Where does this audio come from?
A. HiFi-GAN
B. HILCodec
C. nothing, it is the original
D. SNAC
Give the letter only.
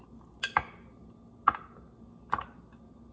C